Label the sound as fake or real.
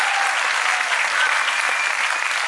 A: real